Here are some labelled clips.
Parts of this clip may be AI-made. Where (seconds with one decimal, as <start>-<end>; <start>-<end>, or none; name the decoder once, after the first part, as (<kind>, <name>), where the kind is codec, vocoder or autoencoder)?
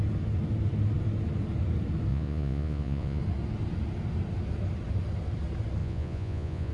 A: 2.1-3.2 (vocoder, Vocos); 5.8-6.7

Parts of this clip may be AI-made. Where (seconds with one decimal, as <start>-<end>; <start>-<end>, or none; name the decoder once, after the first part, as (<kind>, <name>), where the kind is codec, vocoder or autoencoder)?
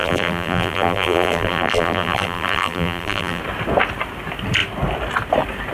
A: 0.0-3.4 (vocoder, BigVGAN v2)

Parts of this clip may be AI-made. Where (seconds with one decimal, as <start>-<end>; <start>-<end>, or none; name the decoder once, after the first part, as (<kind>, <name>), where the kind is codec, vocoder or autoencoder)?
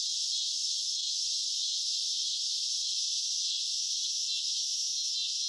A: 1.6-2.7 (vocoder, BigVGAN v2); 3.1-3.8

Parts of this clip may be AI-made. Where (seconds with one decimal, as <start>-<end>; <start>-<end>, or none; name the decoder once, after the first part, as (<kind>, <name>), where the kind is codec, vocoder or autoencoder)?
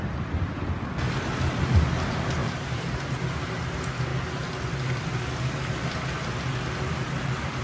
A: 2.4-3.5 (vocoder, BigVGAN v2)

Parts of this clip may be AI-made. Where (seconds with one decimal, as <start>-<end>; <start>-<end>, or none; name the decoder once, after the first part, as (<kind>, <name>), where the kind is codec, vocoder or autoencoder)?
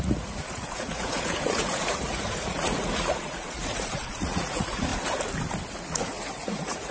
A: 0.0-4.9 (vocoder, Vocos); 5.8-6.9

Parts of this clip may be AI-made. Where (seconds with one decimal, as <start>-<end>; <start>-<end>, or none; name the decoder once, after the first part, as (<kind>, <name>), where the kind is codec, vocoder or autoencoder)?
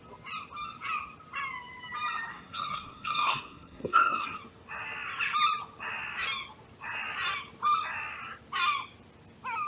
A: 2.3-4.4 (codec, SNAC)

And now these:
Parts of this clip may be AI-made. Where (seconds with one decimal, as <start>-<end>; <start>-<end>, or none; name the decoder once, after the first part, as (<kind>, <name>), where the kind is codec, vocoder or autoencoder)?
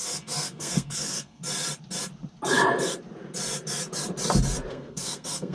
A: 0.0-1.4 (codec, SNAC); 4.7-5.5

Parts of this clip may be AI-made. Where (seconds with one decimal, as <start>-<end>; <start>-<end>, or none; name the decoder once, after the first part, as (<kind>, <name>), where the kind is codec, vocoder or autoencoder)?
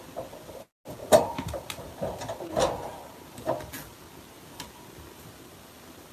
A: none